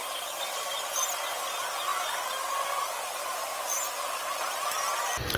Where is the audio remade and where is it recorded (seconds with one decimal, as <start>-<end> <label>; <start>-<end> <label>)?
0.0-0.7 remade; 0.7-5.4 recorded